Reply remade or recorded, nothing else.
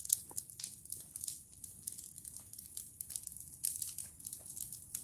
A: recorded